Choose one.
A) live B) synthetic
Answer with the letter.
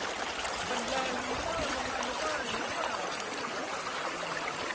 A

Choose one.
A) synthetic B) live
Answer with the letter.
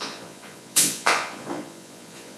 A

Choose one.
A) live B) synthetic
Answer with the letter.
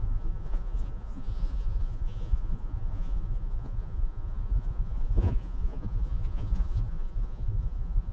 B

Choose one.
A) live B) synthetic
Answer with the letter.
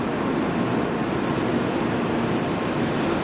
A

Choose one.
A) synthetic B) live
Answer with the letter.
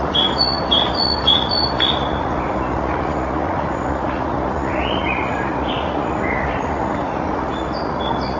A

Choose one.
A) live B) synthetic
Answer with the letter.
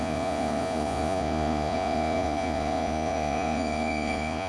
B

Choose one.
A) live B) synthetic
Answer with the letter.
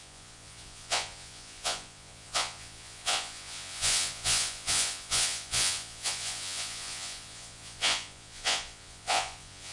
B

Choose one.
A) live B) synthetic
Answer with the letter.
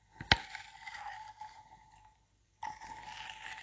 A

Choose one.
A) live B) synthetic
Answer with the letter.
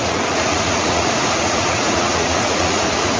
B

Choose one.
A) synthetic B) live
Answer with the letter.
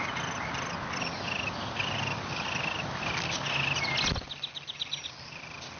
B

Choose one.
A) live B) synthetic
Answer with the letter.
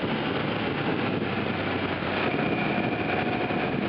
A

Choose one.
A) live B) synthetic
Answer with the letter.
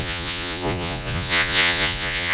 B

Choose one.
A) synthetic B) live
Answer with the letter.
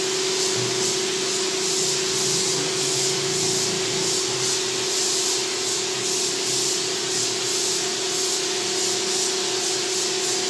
B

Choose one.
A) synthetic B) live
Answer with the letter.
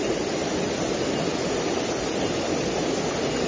B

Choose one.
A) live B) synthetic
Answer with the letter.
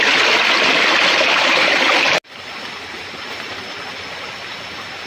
A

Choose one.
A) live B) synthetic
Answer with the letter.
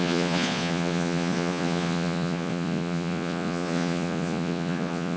B